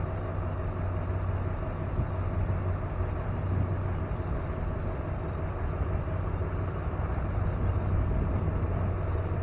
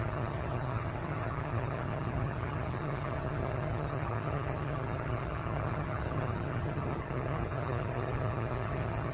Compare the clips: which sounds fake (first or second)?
second